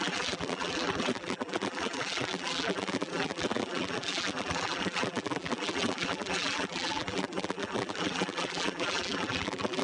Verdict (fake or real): fake